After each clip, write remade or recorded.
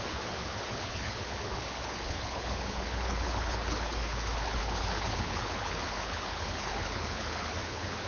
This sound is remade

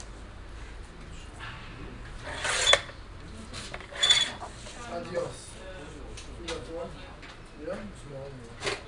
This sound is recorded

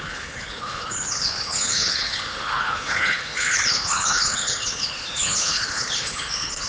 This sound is remade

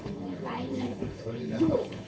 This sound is remade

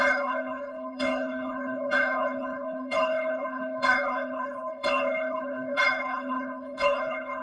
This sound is remade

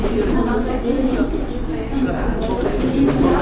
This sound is recorded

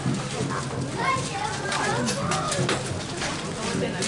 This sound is recorded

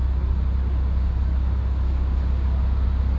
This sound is recorded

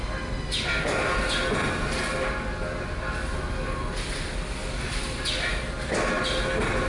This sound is recorded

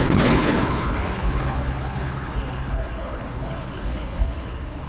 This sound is remade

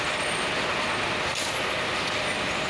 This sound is recorded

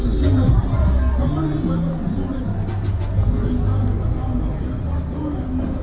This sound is recorded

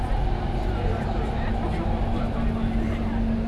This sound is recorded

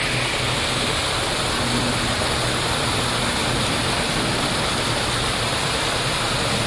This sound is recorded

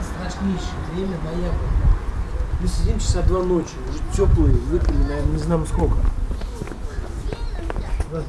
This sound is recorded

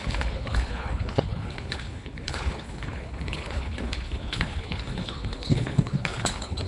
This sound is remade